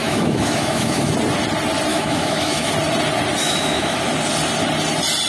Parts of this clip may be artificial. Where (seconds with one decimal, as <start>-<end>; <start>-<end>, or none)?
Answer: 0.0-1.1; 1.9-2.7; 3.4-4.0